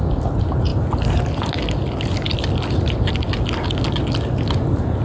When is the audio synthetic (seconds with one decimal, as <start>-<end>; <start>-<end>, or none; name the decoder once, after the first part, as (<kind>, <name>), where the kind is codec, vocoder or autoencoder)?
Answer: none